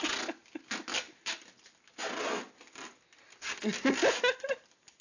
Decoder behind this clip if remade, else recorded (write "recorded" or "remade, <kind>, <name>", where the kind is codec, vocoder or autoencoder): recorded